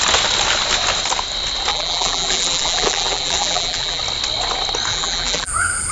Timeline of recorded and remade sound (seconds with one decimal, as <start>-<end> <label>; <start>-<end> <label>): 0.0-1.7 recorded; 1.7-4.0 remade; 4.0-4.9 recorded; 4.9-5.5 remade; 5.5-5.9 recorded